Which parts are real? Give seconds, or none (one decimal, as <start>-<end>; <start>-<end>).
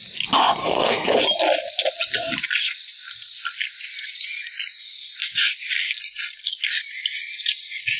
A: 0.0-0.6; 1.2-8.0